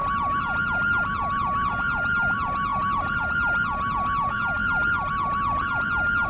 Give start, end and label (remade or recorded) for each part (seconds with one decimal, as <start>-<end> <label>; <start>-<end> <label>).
0.0-6.3 recorded